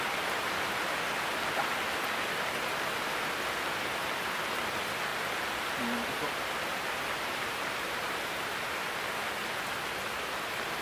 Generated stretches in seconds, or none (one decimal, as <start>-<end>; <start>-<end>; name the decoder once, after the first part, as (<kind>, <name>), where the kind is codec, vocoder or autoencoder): 5.1-9.1 (vocoder, BigVGAN v2)